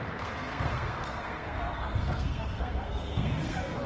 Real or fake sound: fake